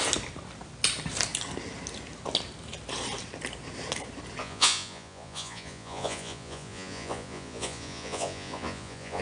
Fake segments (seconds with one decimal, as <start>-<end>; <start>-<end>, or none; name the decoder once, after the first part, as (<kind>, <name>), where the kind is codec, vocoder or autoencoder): 4.4-9.2 (vocoder, Vocos)